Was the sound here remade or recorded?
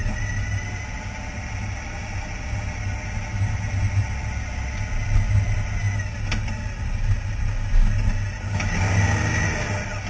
recorded